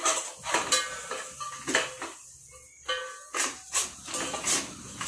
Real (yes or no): yes